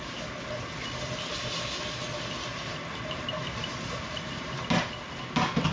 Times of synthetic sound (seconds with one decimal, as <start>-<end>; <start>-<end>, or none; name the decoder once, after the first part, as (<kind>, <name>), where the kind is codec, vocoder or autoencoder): 2.5-4.8 (vocoder, BigVGAN v2)